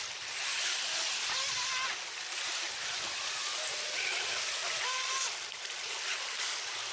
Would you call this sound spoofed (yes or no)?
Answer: no